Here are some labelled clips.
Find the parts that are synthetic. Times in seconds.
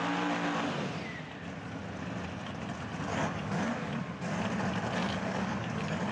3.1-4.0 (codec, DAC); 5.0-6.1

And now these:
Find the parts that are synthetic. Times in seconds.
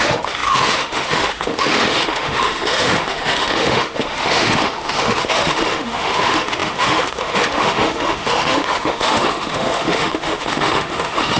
0.0-11.4 (autoencoder, DAC-VAE)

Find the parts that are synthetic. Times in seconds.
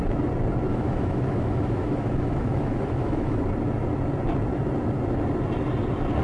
0.7-3.4 (autoencoder, DAC-VAE)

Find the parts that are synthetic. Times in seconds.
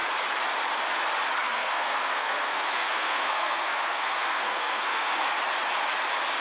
1.5-5.3 (codec, SNAC)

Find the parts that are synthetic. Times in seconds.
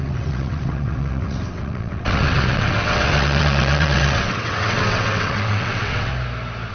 0.0-6.1 (vocoder, WaveNeXt)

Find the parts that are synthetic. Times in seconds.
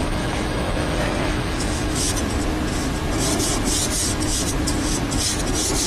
0.0-2.1 (autoencoder, DAC-VAE)